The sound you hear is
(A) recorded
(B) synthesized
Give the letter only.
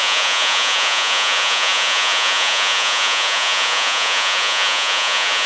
B